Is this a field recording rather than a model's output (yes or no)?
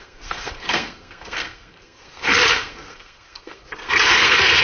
no